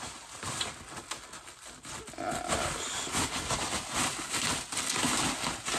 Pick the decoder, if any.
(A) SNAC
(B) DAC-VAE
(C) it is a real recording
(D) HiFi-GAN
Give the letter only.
C